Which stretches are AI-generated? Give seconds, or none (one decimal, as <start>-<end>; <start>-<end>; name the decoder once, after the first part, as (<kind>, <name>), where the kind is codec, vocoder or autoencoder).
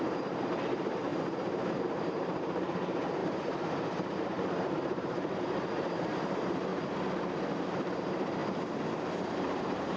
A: 0.0-6.7 (vocoder, BigVGAN v2); 7.7-8.4; 9.2-10.0